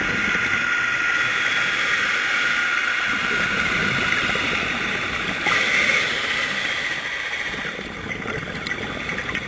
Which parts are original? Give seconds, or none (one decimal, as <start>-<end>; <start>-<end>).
0.0-9.5